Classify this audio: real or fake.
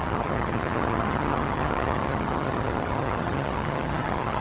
fake